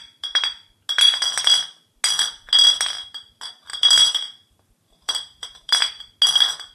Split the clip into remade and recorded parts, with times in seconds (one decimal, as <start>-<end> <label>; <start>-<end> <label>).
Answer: 0.0-3.7 recorded; 3.7-5.8 remade; 5.8-6.7 recorded